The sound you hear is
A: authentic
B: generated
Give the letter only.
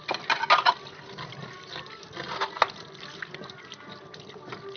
A